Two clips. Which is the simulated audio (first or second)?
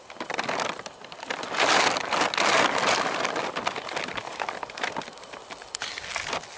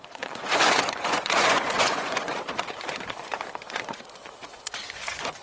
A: second